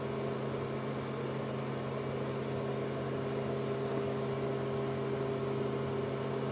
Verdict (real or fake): real